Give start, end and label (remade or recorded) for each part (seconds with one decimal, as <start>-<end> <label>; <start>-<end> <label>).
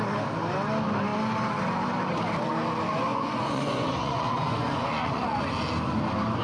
0.0-3.1 recorded; 3.1-5.4 remade; 5.4-6.4 recorded